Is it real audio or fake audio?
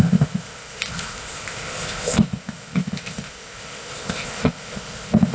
fake